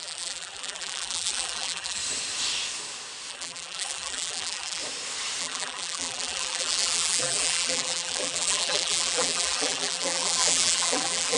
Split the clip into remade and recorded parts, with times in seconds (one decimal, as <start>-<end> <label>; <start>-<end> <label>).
0.0-2.0 remade; 2.0-3.3 recorded; 3.3-4.8 remade; 4.8-5.4 recorded; 5.4-11.4 remade